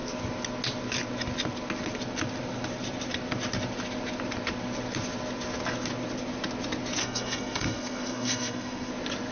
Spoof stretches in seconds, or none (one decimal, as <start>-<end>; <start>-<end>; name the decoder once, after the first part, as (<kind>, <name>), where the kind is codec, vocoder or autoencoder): 7.0-8.9 (codec, SNAC)